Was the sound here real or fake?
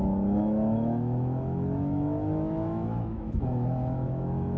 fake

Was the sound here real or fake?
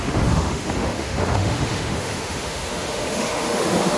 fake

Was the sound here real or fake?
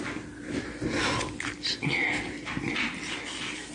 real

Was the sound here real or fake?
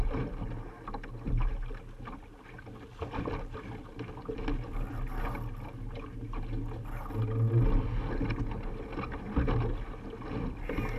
real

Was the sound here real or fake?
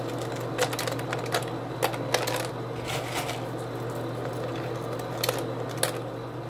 real